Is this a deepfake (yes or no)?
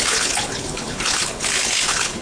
yes